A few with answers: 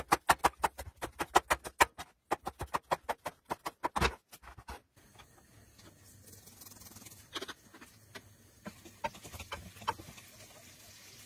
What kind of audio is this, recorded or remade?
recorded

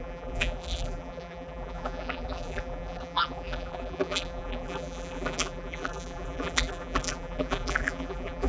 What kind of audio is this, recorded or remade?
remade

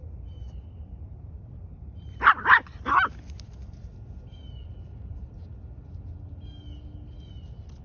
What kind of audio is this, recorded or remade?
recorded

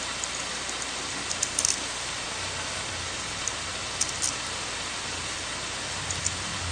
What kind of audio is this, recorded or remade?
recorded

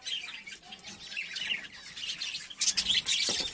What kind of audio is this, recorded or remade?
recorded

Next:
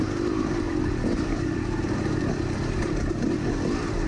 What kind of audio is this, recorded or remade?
remade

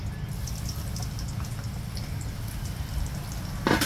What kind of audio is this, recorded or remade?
recorded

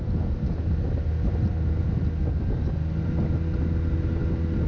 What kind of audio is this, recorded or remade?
recorded